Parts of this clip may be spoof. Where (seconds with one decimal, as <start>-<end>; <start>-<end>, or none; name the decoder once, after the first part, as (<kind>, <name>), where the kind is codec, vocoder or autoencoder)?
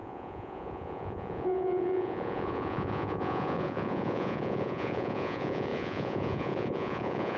0.0-7.4 (vocoder, Vocos)